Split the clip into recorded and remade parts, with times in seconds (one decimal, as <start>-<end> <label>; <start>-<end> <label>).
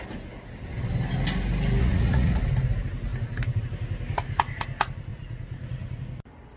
0.0-1.8 recorded; 1.8-2.4 remade; 2.4-5.1 recorded; 5.1-6.0 remade; 6.0-6.6 recorded